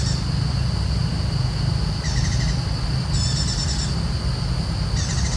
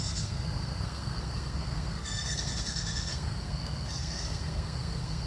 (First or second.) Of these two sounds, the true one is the first